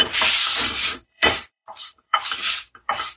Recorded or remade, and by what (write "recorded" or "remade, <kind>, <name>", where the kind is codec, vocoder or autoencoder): remade, vocoder, BigVGAN v2